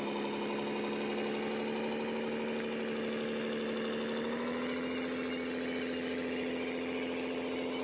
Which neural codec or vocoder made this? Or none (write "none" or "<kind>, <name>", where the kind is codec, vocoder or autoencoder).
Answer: none